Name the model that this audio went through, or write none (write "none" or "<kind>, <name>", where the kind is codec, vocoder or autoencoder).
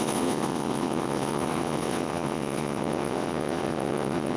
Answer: vocoder, WaveNeXt